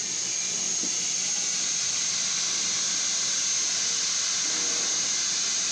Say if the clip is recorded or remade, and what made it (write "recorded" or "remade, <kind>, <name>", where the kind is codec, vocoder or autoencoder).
recorded